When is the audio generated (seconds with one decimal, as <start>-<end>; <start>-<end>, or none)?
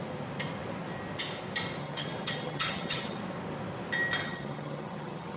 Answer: 1.8-3.2; 4.2-5.4